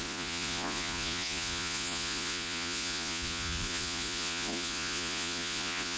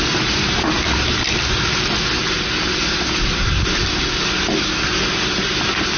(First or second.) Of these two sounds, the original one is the second